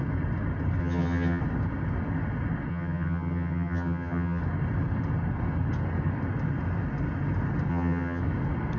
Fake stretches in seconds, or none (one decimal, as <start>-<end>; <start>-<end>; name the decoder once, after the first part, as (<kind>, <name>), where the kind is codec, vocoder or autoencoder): 0.8-1.4 (vocoder, HiFi-GAN); 2.7-4.4; 7.7-8.2